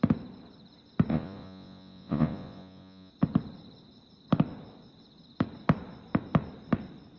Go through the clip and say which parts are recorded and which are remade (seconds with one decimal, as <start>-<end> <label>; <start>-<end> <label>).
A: 0.0-1.1 recorded; 1.1-3.1 remade; 3.1-7.2 recorded